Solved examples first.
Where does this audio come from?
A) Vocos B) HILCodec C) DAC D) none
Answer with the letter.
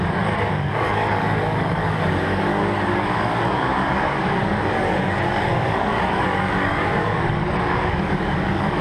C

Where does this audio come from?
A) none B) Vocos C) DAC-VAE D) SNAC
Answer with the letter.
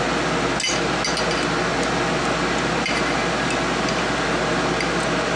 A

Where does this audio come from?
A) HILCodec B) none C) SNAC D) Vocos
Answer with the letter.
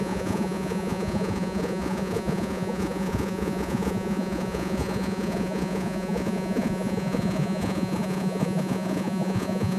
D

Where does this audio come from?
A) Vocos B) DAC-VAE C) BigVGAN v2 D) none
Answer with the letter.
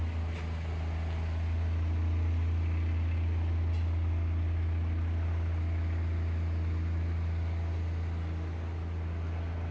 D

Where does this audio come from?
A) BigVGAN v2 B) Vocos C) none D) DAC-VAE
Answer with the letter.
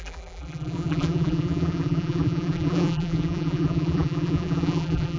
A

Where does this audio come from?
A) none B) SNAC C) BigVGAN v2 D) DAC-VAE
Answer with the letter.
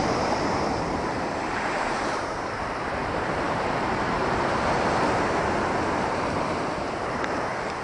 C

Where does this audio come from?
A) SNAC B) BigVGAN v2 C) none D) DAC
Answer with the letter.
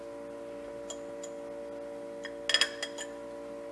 C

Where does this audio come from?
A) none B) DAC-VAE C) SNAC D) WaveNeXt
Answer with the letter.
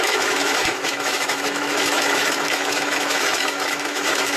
B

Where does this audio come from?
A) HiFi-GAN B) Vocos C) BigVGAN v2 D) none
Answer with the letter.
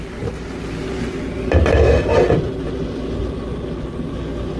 D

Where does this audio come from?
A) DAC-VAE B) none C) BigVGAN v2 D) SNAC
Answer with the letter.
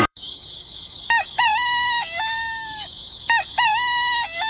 A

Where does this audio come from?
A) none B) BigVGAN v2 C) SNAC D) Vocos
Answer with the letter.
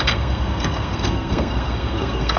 C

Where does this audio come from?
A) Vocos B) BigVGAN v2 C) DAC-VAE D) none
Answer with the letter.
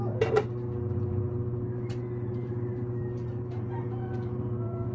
D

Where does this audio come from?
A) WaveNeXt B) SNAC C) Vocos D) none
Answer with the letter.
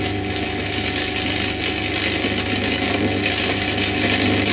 D